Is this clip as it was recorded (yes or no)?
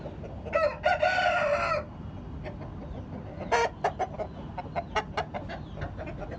yes